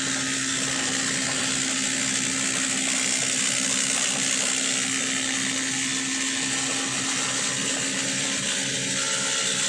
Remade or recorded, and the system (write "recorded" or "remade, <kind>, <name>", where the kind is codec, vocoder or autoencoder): recorded